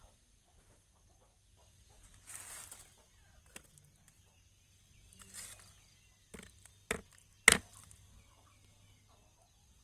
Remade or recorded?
recorded